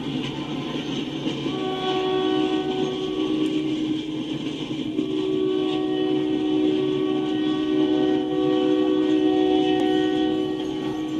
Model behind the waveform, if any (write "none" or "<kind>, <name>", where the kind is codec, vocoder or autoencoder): none